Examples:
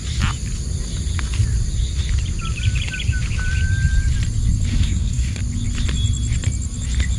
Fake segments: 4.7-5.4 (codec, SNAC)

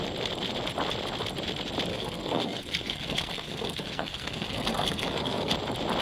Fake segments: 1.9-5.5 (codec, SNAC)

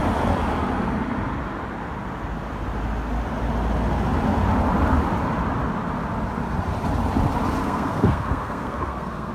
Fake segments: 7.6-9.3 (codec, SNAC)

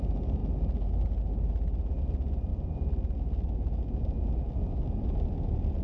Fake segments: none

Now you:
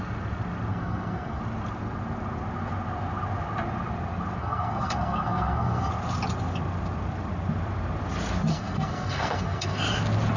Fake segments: 0.7-1.4 (codec, SNAC); 4.4-5.9; 8.5-9.8

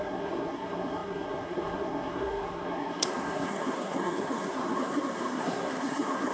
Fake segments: 0.0-6.3 (codec, SNAC)

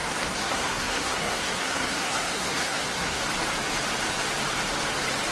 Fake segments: 0.0-3.2 (codec, SNAC)

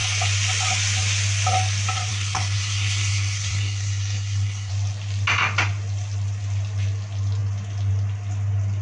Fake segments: 2.1-4.7 (codec, SNAC)